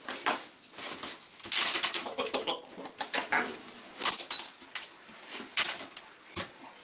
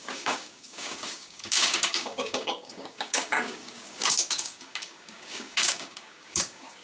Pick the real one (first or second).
first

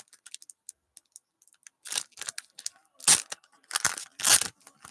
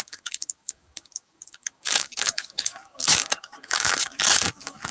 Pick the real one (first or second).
first